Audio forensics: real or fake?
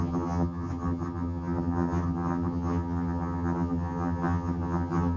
fake